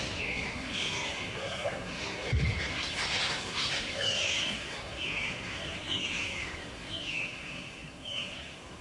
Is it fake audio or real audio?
fake